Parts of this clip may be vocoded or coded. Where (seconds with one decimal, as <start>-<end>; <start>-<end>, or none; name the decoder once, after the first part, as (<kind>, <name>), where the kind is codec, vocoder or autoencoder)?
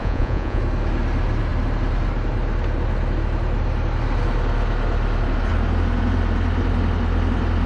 0.0-0.6 (vocoder, Vocos)